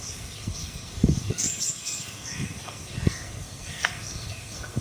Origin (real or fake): fake